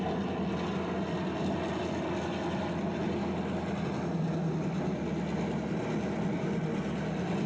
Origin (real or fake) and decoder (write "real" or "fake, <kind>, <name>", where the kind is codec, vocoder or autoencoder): real